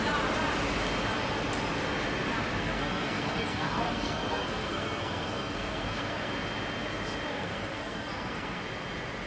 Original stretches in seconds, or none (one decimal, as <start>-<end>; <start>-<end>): 0.0-2.6; 6.3-7.3; 8.6-9.3